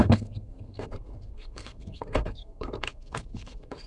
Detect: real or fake fake